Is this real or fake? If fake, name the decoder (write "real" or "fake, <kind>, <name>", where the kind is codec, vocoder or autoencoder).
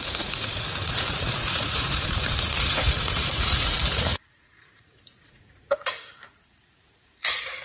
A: fake, vocoder, Vocos